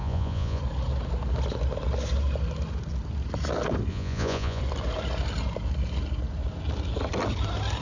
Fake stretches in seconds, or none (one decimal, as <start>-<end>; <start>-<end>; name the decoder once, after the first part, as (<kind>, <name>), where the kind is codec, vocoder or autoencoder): 0.0-0.6 (vocoder, Vocos); 3.9-4.6